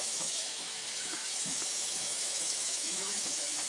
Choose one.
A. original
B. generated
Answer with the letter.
B